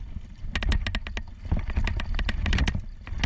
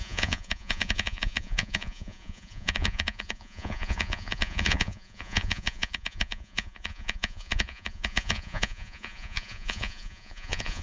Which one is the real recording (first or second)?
first